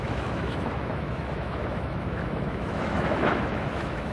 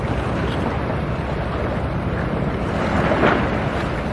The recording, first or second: second